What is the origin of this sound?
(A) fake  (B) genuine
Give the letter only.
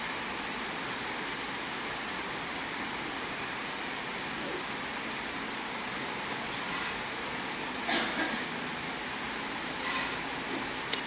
B